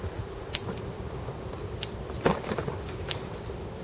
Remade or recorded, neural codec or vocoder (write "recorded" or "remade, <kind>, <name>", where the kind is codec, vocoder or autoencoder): recorded